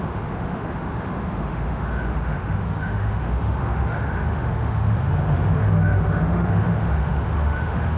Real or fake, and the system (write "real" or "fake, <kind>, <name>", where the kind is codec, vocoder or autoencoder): fake, autoencoder, DAC-VAE